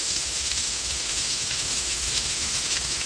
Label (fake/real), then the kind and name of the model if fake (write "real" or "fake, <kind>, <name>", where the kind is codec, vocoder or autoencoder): fake, autoencoder, DAC-VAE